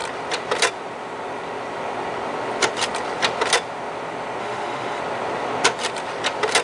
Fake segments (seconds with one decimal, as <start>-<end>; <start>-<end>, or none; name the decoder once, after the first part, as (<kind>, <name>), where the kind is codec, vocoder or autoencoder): 4.4-5.0 (autoencoder, DAC-VAE)